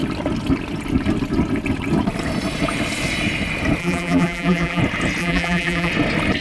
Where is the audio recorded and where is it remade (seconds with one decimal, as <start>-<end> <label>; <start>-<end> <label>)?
0.0-3.8 recorded; 3.8-4.8 remade; 4.8-5.2 recorded; 5.2-5.9 remade; 5.9-6.4 recorded